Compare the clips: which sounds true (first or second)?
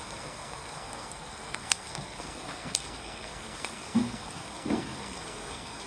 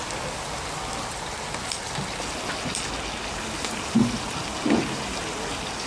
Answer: second